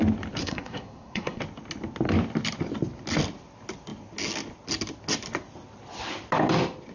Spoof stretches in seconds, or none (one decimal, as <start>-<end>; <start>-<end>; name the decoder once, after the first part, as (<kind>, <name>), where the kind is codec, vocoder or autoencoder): 0.4-1.4 (codec, SNAC)